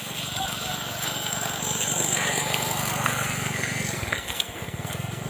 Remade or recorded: remade